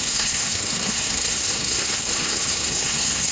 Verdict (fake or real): fake